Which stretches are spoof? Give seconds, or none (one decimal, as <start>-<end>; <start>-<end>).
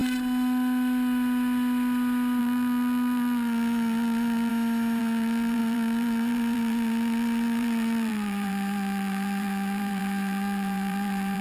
2.4-4.5; 5.0-11.4